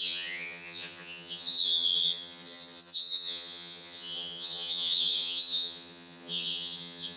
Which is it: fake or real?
fake